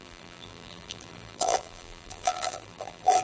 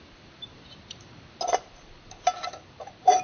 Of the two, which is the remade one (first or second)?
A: first